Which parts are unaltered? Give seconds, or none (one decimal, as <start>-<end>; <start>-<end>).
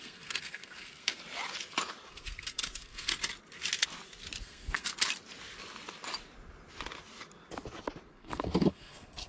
1.2-2.1; 3.1-4.4; 4.9-8.1